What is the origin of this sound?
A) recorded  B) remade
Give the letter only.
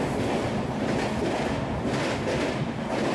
A